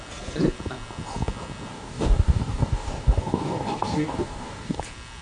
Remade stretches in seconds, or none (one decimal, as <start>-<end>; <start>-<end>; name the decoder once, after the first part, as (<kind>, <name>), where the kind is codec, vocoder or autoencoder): 1.7-4.8 (codec, DAC)